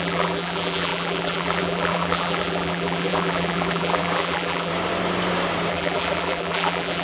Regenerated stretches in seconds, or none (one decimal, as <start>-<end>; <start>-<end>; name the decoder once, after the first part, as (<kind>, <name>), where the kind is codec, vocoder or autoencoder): 0.0-4.7 (vocoder, BigVGAN v2); 5.7-7.0